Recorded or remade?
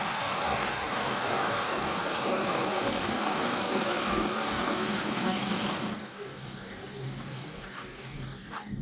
remade